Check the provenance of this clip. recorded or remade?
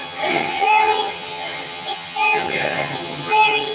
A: remade